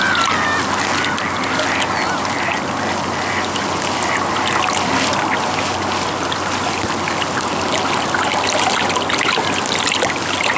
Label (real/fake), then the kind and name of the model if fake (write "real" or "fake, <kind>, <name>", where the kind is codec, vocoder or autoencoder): real